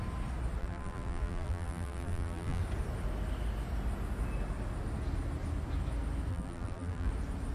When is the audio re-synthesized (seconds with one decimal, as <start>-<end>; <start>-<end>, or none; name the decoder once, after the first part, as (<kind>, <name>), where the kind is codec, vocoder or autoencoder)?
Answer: 0.6-2.6 (vocoder, BigVGAN v2); 6.3-7.1